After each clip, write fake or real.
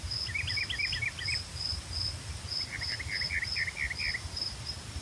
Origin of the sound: real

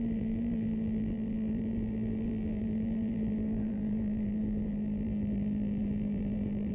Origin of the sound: fake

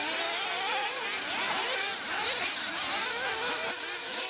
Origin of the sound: real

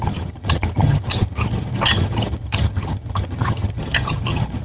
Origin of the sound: fake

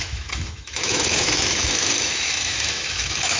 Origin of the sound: fake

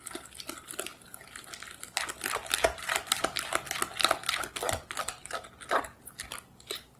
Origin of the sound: real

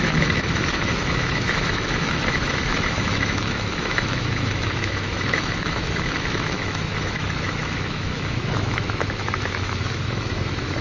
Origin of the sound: fake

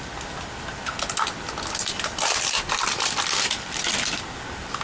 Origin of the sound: real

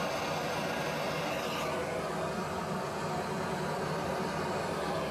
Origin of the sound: real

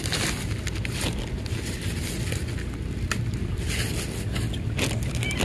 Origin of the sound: real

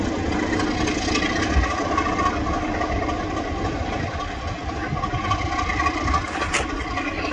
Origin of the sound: real